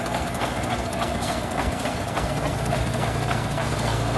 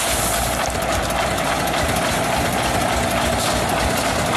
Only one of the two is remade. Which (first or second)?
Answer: first